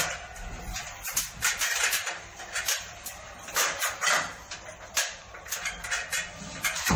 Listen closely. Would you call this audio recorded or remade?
remade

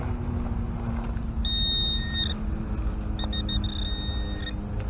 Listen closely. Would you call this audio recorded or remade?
recorded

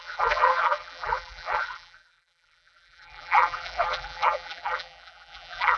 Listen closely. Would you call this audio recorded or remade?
remade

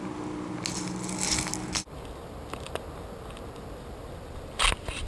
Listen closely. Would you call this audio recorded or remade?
recorded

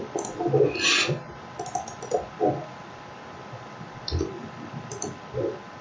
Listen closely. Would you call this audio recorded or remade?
recorded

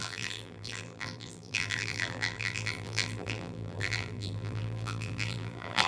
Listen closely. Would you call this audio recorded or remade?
remade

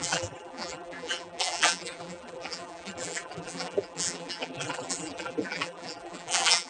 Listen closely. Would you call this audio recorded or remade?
remade